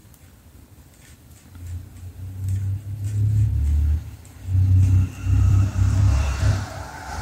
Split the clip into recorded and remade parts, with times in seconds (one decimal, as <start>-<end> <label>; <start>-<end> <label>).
0.0-5.2 recorded; 5.2-6.5 remade; 6.5-7.2 recorded